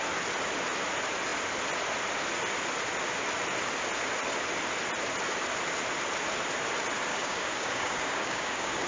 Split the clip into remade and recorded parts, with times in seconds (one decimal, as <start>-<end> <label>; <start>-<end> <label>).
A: 0.0-7.1 recorded; 7.1-8.9 remade